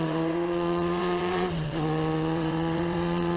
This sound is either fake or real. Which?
fake